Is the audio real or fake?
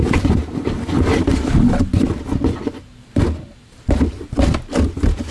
real